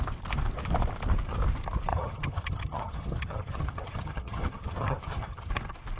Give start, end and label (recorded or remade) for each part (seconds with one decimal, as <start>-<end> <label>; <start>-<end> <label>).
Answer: 0.0-1.9 recorded; 1.9-5.5 remade; 5.5-6.0 recorded